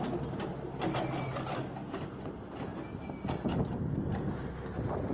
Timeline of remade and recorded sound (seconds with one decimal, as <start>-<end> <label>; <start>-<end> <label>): 0.0-5.1 recorded